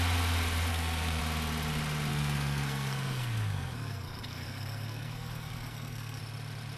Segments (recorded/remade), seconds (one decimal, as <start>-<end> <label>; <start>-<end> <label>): 0.0-0.7 recorded; 0.7-1.2 remade; 1.2-2.1 recorded; 2.1-6.2 remade; 6.2-6.8 recorded

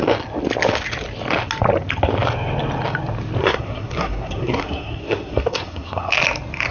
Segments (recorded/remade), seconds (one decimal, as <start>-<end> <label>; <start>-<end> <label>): 0.0-3.4 recorded; 3.4-6.1 remade; 6.1-6.7 recorded

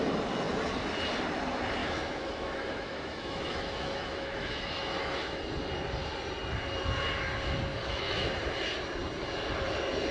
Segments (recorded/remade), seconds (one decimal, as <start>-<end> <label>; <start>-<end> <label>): 0.0-1.8 recorded; 1.8-5.4 remade; 5.4-7.7 recorded; 7.7-8.3 remade; 8.3-10.1 recorded

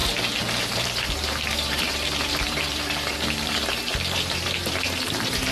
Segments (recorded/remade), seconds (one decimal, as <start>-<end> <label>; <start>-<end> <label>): 0.0-0.6 recorded; 0.6-5.5 remade

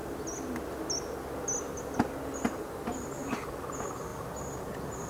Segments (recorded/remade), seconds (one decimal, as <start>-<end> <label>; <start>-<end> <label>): 0.0-5.1 recorded